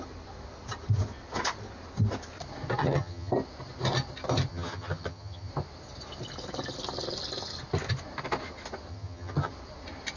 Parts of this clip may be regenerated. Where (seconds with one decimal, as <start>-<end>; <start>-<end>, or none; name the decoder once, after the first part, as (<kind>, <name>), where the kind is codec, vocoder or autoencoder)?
2.8-3.3 (vocoder, HiFi-GAN); 4.5-5.5; 8.9-9.5